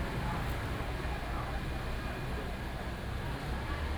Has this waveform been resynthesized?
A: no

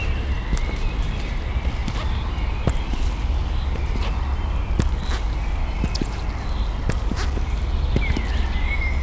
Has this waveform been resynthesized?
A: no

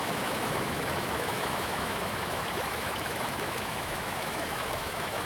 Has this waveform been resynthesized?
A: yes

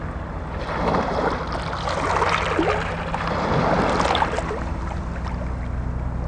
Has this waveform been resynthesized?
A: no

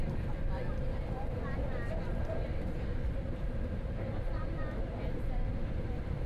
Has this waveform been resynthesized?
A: yes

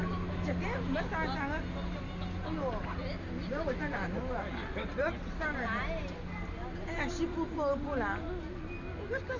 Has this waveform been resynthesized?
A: no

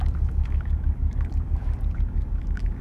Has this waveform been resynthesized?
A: yes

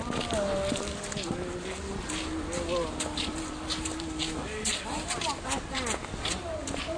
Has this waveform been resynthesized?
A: no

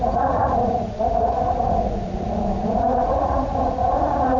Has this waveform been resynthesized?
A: yes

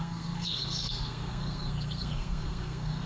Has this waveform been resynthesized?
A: yes